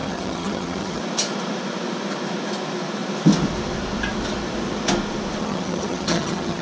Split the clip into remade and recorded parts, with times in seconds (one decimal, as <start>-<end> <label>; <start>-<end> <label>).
0.0-1.0 remade; 1.0-5.4 recorded; 5.4-6.6 remade